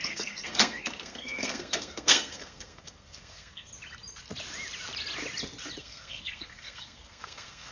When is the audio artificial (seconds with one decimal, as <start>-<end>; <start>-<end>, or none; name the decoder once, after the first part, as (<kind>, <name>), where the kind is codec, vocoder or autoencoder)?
0.0-3.7 (codec, SNAC); 5.8-7.7